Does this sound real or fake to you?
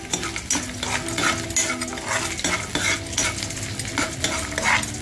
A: real